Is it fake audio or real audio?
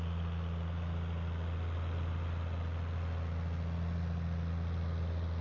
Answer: real